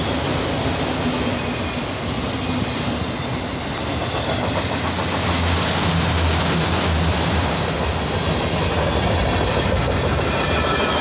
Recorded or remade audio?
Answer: recorded